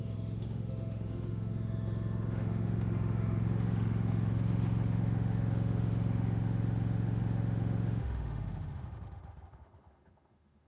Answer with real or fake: fake